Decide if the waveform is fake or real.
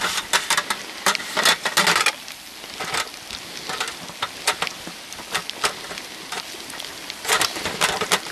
real